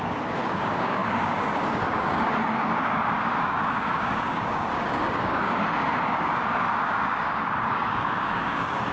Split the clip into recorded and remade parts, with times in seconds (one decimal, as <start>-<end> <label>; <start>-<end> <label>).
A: 0.0-8.9 remade